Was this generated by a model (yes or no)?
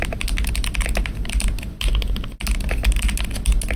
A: no